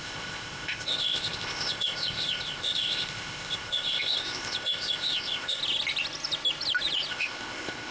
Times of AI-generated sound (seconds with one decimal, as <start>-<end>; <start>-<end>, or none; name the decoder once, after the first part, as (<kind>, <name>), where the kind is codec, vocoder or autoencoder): 0.0-5.6 (codec, ZipCodec); 7.1-7.9